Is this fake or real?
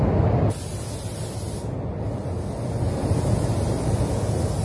real